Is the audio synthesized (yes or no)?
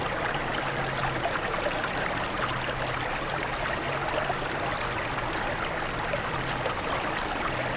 no